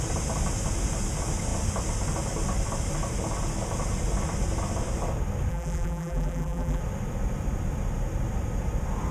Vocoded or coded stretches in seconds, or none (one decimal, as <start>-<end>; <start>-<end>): 5.5-6.8